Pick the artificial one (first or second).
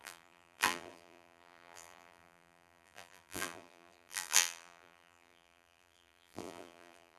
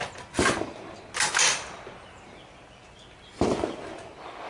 first